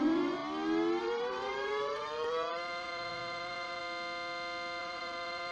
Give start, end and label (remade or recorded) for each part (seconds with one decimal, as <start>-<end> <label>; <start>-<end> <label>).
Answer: 0.0-0.4 remade; 0.4-1.0 recorded; 1.0-3.8 remade; 3.8-4.8 recorded; 4.8-5.5 remade